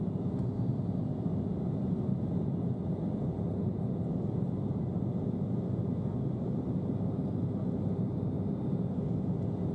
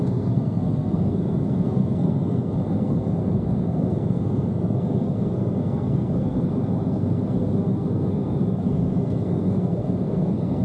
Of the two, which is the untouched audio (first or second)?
first